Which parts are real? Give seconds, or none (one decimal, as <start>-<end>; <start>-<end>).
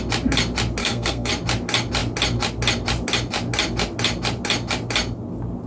0.0-0.8; 1.3-5.7